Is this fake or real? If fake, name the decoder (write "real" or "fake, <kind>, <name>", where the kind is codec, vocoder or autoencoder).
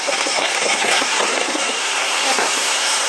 fake, codec, SNAC